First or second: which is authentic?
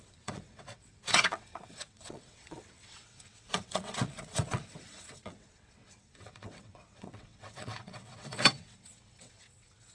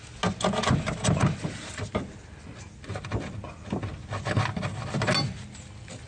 second